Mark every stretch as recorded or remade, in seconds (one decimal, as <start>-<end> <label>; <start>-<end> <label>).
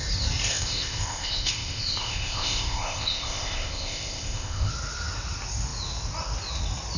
0.0-0.5 recorded; 0.5-4.7 remade; 4.7-7.0 recorded